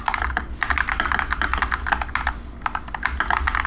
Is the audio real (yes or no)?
yes